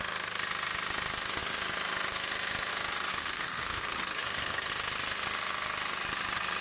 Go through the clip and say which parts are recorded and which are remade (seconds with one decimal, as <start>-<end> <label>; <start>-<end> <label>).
0.0-3.1 recorded; 3.1-4.7 remade; 4.7-6.6 recorded